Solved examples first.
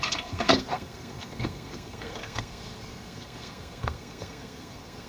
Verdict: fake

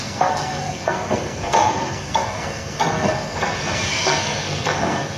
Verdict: fake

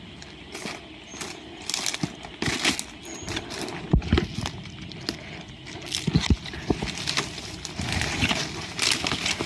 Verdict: real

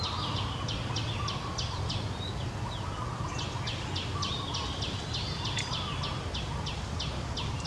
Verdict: real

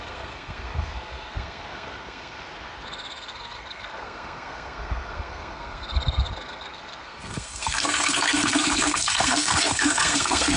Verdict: fake